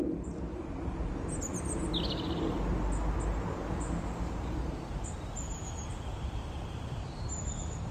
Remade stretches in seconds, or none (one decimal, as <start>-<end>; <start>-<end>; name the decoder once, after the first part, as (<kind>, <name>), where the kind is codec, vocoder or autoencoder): 0.0-1.9 (vocoder, BigVGAN v2); 3.7-7.9

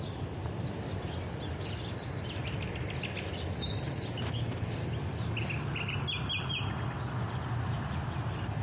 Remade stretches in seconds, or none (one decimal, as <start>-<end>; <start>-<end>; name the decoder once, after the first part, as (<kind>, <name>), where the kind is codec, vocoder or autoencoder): none

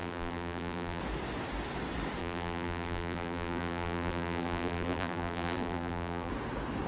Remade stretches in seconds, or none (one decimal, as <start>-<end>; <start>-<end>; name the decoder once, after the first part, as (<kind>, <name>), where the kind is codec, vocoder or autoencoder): 0.0-1.0 (vocoder, BigVGAN v2); 2.2-6.3

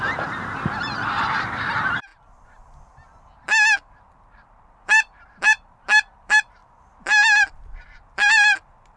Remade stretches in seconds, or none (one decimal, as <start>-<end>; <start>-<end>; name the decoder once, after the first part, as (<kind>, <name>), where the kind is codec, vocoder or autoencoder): 0.0-2.1 (vocoder, BigVGAN v2); 3.9-6.6; 7.4-9.0

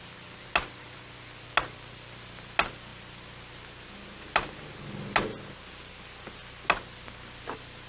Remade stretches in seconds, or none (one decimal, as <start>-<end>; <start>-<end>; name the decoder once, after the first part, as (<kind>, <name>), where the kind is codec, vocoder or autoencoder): none

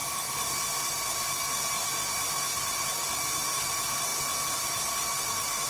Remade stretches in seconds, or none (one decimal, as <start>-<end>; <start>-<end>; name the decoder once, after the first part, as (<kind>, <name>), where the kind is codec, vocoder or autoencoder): 0.9-1.9 (vocoder, BigVGAN v2); 3.2-5.7

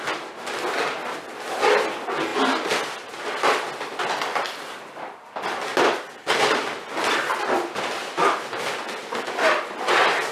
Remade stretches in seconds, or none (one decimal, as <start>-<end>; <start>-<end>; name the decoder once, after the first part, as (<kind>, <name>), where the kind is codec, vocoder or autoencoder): 9.0-10.3 (vocoder, BigVGAN v2)

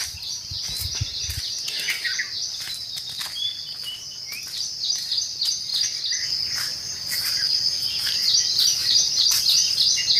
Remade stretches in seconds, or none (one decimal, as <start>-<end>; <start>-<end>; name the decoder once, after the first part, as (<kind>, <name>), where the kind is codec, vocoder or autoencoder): 8.8-9.4 (vocoder, BigVGAN v2)